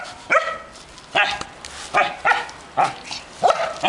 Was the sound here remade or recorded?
recorded